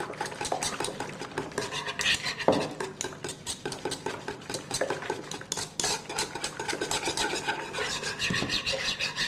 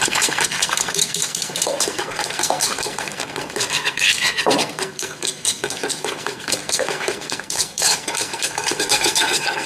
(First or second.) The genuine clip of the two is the first